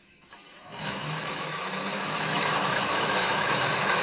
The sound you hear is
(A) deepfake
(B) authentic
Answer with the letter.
A